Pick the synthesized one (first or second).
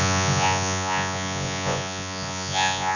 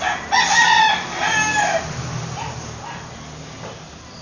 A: first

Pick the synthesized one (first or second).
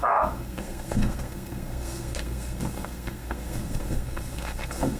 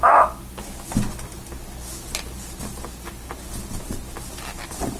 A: first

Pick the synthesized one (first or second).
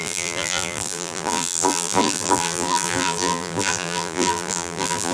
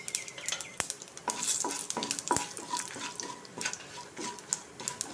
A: first